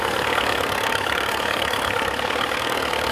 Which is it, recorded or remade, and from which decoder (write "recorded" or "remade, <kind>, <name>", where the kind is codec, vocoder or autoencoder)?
remade, codec, DAC